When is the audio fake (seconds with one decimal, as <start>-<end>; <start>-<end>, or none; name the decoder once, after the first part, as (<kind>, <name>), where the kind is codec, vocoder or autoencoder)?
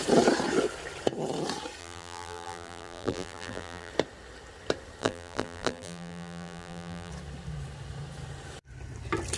1.8-3.9 (vocoder, BigVGAN v2); 5.0-7.1